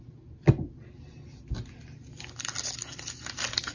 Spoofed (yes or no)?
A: no